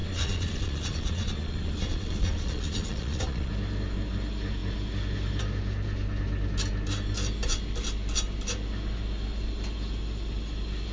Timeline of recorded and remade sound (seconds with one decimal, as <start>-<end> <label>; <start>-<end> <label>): 0.0-3.5 remade; 3.5-10.9 recorded